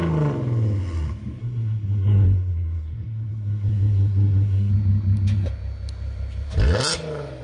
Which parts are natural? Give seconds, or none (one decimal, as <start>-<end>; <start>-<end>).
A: 0.0-1.4; 4.7-7.4